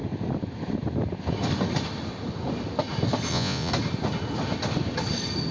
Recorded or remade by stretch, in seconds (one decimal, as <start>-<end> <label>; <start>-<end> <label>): 0.0-3.3 recorded; 3.3-3.7 remade; 3.7-5.5 recorded